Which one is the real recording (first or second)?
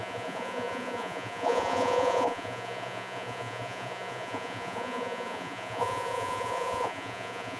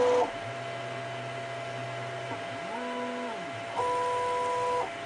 second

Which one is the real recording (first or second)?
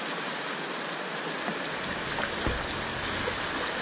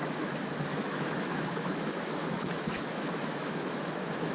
first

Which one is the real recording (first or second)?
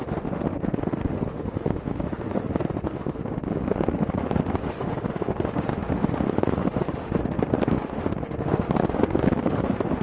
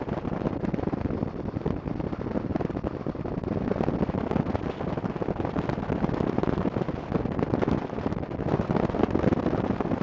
second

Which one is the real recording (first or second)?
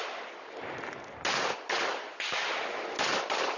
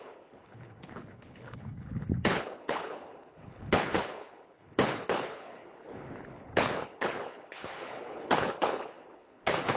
first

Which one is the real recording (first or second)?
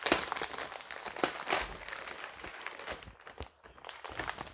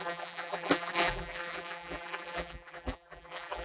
first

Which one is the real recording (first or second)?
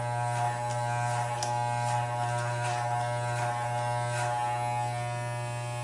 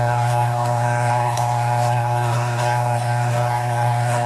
first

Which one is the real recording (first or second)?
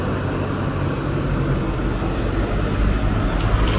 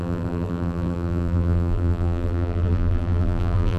first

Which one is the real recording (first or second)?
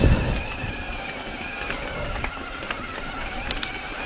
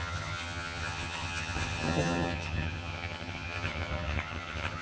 first